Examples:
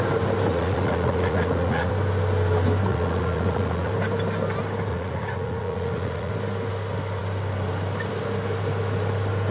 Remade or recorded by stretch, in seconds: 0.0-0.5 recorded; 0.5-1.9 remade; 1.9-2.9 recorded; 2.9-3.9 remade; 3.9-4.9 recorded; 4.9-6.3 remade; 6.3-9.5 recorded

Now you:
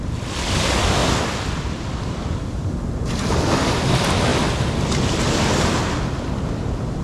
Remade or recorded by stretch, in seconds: 0.0-1.0 recorded; 1.0-3.1 remade; 3.1-4.3 recorded; 4.3-5.2 remade; 5.2-7.0 recorded

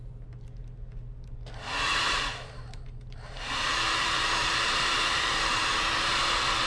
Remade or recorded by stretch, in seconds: 0.0-1.9 recorded; 1.9-5.9 remade; 5.9-6.7 recorded

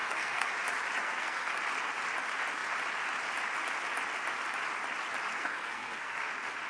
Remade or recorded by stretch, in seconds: 0.0-0.5 remade; 0.5-1.0 recorded; 1.0-1.6 remade; 1.6-5.3 recorded; 5.3-6.3 remade; 6.3-6.7 recorded

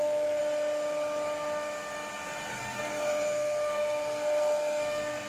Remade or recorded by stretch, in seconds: 0.0-0.4 remade; 0.4-2.5 recorded; 2.5-5.3 remade

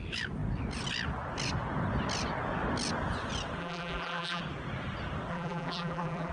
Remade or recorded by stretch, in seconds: 0.0-3.6 recorded; 3.6-4.4 remade; 4.4-5.3 recorded; 5.3-6.3 remade